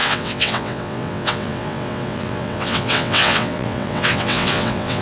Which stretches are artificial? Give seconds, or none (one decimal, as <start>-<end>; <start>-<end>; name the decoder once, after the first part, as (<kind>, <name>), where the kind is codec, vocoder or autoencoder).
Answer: 0.0-5.0 (vocoder, WaveNeXt)